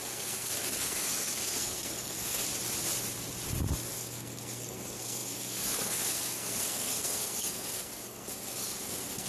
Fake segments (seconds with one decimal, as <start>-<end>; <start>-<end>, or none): 0.0-2.4; 3.9-9.3